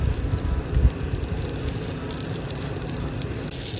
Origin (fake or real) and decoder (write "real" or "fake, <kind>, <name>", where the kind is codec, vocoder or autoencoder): real